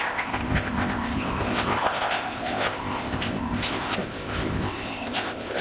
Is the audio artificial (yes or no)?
yes